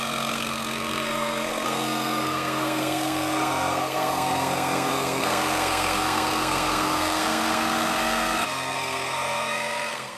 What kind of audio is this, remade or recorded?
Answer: remade